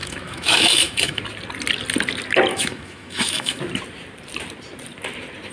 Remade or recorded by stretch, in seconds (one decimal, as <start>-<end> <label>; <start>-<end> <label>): 0.0-1.2 remade; 1.2-2.5 recorded; 2.5-3.6 remade; 3.6-5.5 recorded